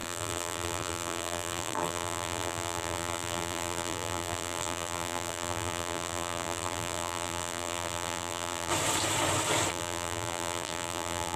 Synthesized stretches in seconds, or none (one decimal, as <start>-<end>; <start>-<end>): 0.0-8.7; 9.7-11.4